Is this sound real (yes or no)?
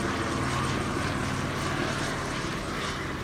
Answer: yes